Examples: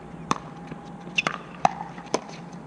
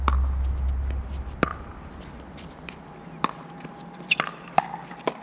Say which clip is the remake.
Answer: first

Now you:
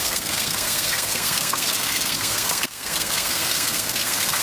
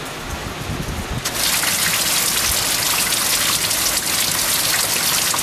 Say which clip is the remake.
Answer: first